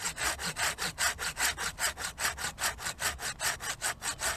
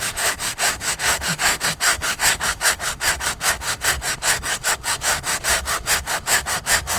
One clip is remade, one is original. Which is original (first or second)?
first